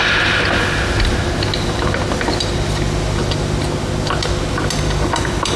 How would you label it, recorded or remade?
recorded